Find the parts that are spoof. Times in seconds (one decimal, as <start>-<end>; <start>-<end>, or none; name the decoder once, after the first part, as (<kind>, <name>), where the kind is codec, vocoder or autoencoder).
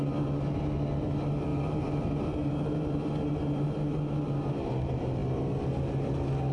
1.5-4.5 (vocoder, BigVGAN v2)